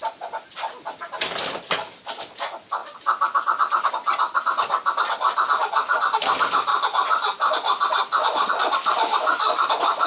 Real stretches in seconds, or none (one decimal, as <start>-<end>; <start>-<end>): 0.0-10.1